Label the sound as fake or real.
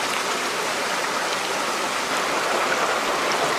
real